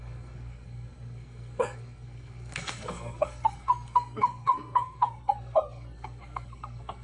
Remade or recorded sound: remade